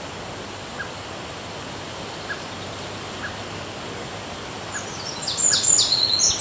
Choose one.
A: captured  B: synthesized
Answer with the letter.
A